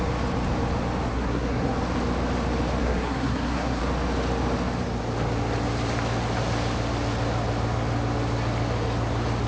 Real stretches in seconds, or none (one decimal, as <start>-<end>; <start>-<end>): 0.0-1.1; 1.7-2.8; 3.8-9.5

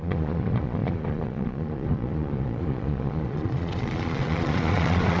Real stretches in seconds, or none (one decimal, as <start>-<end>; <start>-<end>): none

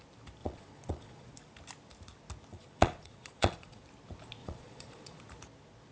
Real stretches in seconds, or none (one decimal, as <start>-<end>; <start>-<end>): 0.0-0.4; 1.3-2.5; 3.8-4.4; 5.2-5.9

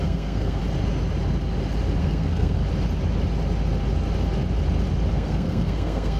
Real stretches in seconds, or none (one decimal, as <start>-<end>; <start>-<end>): 0.6-2.0; 2.6-5.1

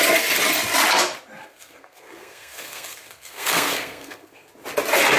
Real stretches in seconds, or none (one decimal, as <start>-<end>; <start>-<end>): 0.0-1.4; 4.5-5.2

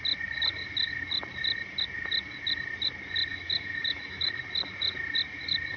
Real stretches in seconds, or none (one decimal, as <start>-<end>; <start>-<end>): 0.0-3.3; 4.3-5.8

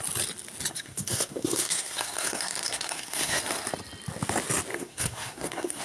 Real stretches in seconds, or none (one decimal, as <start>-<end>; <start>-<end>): 0.0-0.7; 3.4-4.7